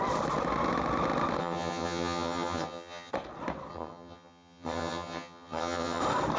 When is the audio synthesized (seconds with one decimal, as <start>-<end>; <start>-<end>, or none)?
1.4-3.1; 3.7-6.0